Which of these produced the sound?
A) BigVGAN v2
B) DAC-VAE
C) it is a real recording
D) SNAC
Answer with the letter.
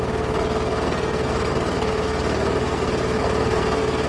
D